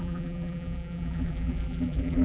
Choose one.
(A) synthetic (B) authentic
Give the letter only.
A